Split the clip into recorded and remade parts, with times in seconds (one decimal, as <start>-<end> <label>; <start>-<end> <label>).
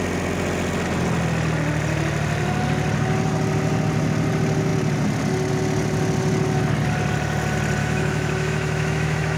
0.0-7.8 recorded; 7.8-9.4 remade